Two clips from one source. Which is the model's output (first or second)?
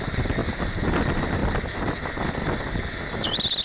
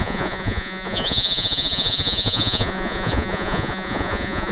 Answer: second